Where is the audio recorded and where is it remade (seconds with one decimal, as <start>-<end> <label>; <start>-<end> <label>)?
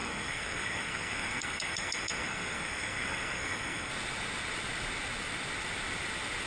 0.0-3.9 remade; 3.9-6.5 recorded